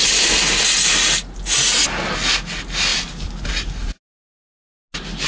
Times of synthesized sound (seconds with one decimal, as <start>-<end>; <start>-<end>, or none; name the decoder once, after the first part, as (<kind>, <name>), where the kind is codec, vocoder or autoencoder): none